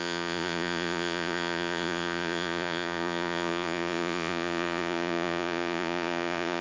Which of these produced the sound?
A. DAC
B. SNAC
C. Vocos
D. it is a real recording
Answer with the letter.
C